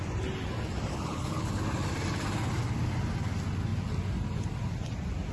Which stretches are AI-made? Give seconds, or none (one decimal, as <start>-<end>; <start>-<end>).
0.9-1.5